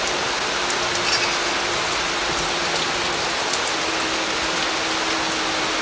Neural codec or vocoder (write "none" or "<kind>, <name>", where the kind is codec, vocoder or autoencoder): none